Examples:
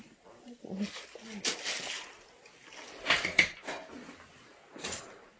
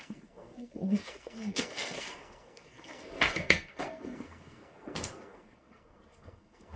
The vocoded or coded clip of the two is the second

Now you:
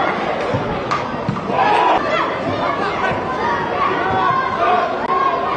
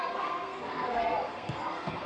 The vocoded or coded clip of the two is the second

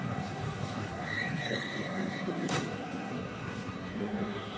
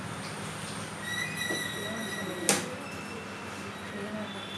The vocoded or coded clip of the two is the first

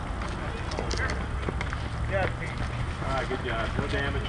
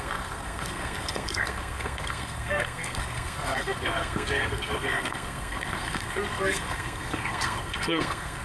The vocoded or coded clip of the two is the second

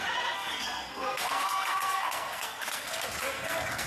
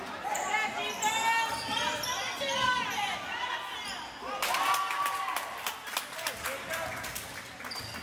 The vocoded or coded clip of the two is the first